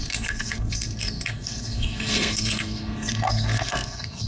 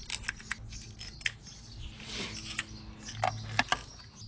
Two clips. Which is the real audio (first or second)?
second